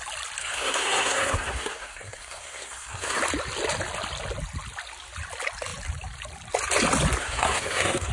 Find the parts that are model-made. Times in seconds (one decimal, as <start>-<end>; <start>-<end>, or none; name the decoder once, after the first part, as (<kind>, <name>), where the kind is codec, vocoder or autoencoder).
0.4-3.2 (codec, SNAC); 7.2-8.1